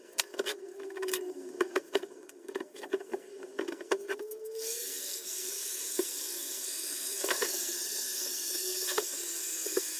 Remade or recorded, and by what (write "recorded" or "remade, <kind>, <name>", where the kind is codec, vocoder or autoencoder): remade, codec, SNAC